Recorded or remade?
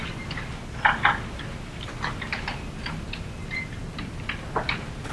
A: recorded